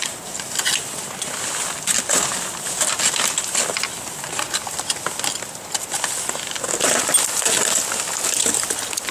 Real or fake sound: real